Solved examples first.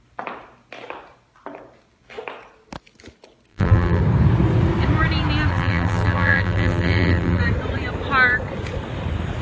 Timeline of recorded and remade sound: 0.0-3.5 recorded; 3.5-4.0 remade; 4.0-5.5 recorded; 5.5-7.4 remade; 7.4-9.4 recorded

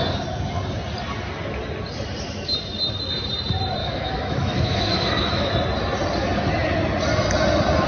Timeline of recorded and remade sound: 0.0-3.8 recorded; 3.8-5.5 remade; 5.5-7.9 recorded

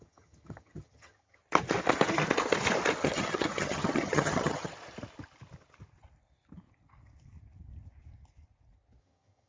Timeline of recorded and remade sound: 0.0-1.4 remade; 1.4-3.0 recorded; 3.0-4.7 remade; 4.7-9.0 recorded; 9.0-9.5 remade

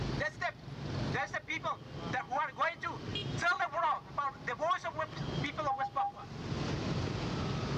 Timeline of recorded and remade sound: 0.0-7.8 recorded

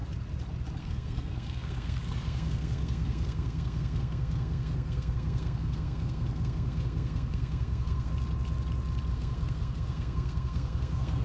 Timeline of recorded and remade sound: 0.0-0.8 recorded; 0.8-8.1 remade; 8.1-9.1 recorded; 9.1-11.2 remade

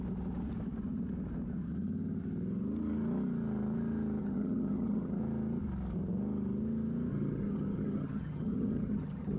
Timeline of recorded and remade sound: 0.0-4.2 recorded; 4.2-5.2 remade; 5.2-7.1 recorded; 7.1-9.4 remade